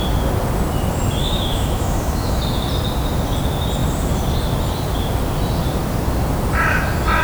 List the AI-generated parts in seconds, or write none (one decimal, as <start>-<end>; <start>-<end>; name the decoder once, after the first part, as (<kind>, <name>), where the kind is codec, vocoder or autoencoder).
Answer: 1.2-2.4 (autoencoder, DAC-VAE)